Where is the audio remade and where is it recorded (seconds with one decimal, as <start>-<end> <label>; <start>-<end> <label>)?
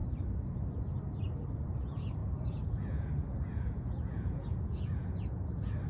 0.0-2.2 recorded; 2.2-5.4 remade; 5.4-5.9 recorded